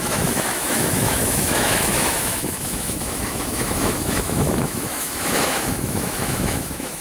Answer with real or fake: fake